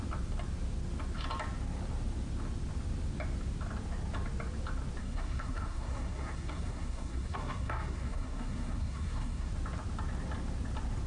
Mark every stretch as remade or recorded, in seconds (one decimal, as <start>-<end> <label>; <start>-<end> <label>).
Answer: 0.0-5.0 recorded; 5.0-9.5 remade; 9.5-11.1 recorded